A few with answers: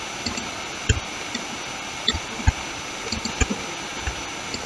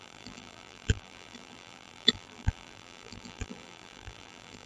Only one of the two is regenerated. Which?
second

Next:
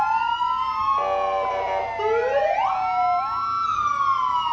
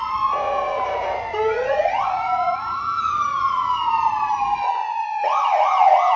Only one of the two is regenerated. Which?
second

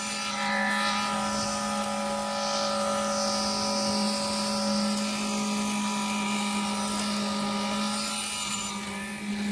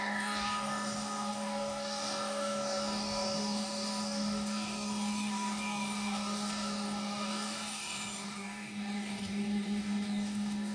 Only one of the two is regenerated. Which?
second